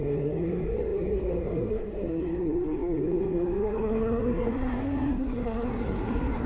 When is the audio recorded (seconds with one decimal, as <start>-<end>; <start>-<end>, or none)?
none